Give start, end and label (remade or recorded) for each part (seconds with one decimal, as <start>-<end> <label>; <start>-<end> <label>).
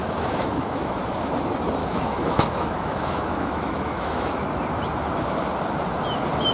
0.0-1.0 remade; 1.0-1.8 recorded; 1.8-4.4 remade; 4.4-6.5 recorded